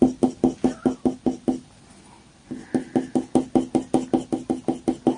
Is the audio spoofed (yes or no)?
no